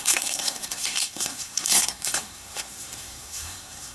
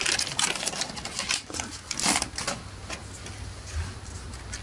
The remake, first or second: first